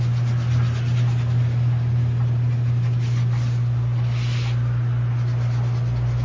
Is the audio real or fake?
real